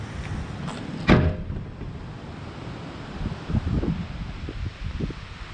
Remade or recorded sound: recorded